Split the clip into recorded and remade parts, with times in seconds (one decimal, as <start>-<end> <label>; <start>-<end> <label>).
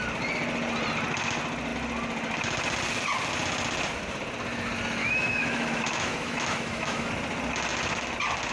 0.0-5.0 recorded; 5.0-7.1 remade; 7.1-8.5 recorded